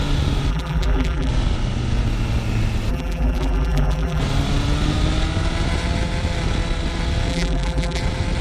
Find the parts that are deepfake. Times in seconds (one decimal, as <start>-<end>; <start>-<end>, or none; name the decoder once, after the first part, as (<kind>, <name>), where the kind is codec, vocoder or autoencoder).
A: 0.5-1.3 (vocoder, BigVGAN v2); 2.9-4.2; 7.3-8.0